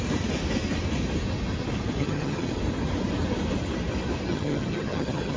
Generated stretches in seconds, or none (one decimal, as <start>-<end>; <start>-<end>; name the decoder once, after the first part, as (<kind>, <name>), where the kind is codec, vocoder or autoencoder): 2.0-2.5 (vocoder, HiFi-GAN); 4.3-5.4